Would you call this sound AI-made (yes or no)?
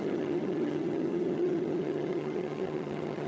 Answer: yes